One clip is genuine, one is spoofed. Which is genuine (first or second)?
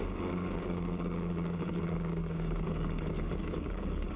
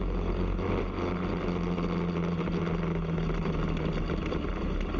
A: second